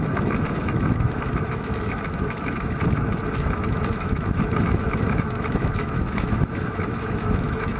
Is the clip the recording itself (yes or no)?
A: no